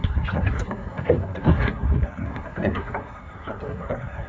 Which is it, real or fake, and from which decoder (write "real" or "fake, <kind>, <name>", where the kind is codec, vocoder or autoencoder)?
fake, codec, SNAC